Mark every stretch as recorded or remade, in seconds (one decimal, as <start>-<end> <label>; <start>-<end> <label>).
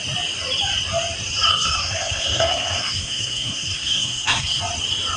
0.0-1.5 recorded; 1.5-4.6 remade; 4.6-5.2 recorded